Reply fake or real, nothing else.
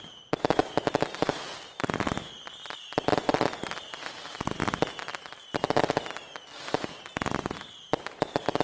real